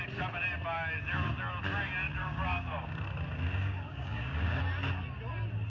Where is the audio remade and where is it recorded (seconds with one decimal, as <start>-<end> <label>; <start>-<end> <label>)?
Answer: 0.0-2.2 recorded; 2.2-4.6 remade; 4.6-5.7 recorded